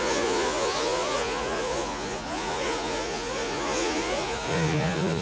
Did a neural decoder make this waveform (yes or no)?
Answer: yes